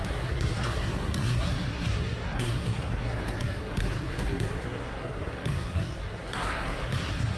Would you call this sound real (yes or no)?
no